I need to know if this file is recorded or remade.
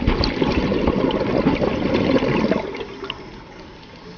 recorded